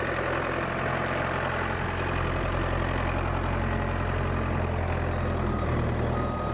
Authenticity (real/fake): real